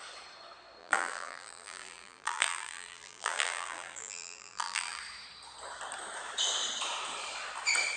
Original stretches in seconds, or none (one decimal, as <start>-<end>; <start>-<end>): 0.0-0.8; 5.0-8.0